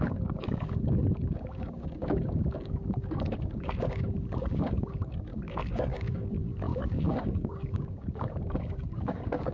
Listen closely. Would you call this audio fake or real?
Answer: fake